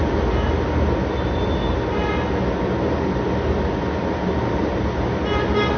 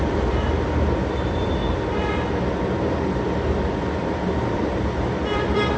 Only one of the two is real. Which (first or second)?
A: first